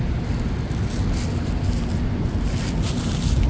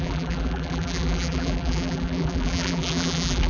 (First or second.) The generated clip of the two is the second